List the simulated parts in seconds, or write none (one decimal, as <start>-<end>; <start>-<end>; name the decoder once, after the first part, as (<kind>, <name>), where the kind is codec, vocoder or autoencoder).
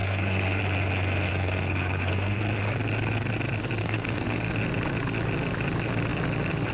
0.0-0.6 (codec, SNAC); 1.3-2.4; 3.8-4.5